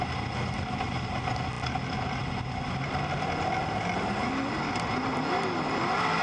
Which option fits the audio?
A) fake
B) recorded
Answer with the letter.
B